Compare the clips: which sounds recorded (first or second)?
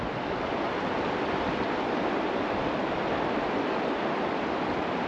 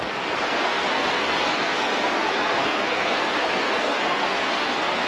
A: first